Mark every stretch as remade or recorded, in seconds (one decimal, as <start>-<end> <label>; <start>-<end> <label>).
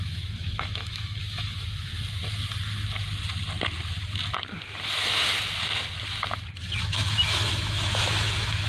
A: 0.0-1.9 remade; 1.9-6.8 recorded; 6.8-8.7 remade